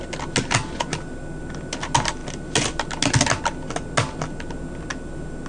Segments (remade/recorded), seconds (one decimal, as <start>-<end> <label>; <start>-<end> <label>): 0.0-5.5 recorded